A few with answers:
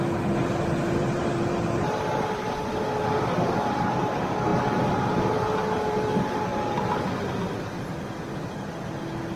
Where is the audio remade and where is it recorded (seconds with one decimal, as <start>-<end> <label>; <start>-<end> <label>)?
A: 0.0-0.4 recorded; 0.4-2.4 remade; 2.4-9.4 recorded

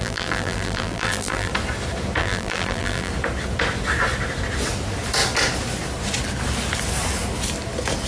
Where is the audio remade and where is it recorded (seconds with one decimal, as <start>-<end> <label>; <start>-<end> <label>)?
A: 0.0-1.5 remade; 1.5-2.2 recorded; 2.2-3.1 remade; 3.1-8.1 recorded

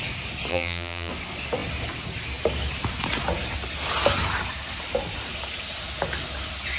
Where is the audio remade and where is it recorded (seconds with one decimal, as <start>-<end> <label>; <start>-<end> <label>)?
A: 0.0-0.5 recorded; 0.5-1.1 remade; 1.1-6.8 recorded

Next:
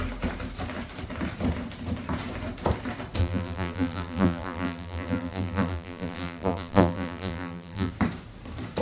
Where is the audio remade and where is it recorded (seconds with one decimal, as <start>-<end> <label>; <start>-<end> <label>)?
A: 0.0-3.2 recorded; 3.2-7.9 remade; 7.9-8.8 recorded

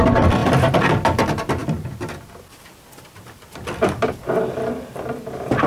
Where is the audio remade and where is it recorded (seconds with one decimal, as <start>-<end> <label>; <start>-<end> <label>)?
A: 0.0-5.7 recorded